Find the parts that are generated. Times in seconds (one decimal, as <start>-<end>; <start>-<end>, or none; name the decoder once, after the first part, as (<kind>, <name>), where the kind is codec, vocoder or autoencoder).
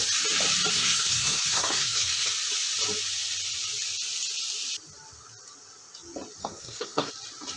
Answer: 0.7-2.3 (codec, SNAC); 6.4-7.1